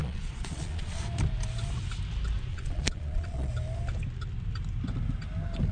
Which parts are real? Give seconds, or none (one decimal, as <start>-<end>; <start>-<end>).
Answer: 1.0-2.5; 3.5-5.7